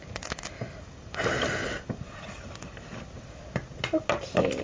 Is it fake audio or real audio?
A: real